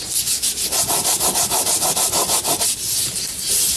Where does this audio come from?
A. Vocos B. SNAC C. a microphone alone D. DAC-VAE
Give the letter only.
C